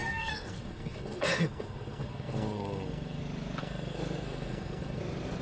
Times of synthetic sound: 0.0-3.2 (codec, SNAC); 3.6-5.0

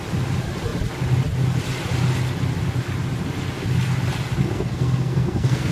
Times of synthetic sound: 4.4-5.7 (codec, SNAC)